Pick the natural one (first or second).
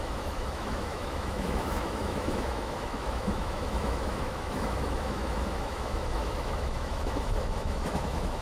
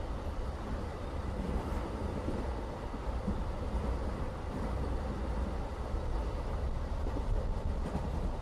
second